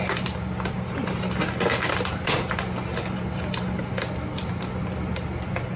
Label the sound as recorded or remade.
recorded